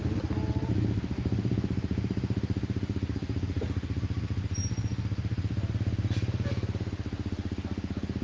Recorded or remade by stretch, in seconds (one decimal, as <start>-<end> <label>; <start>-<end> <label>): 0.0-8.2 recorded